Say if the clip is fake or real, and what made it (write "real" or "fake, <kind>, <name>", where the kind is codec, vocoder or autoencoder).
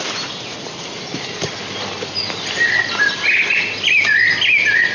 real